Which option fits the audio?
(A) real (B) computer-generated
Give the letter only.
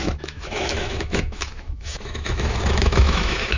B